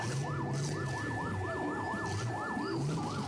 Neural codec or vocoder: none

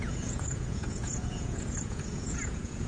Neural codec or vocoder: vocoder, Vocos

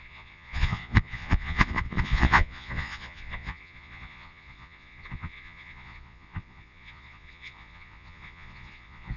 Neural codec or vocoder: vocoder, Vocos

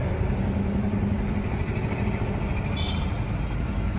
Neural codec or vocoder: none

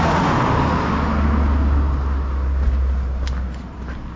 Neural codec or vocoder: none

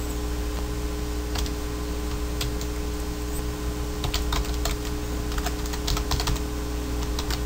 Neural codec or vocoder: none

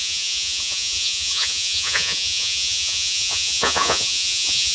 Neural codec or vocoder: vocoder, Vocos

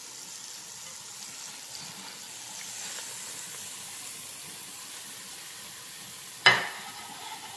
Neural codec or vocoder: none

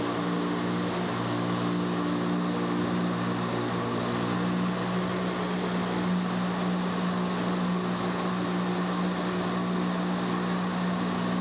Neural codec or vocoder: none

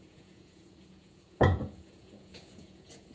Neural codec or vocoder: vocoder, Vocos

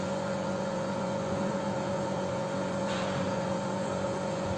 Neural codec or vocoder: vocoder, Vocos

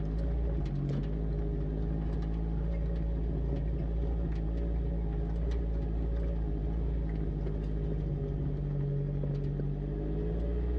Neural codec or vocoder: none